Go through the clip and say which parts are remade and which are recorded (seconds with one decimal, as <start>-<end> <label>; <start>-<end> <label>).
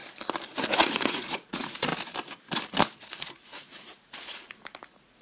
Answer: 0.0-0.7 recorded; 0.7-1.9 remade; 1.9-3.1 recorded; 3.1-5.2 remade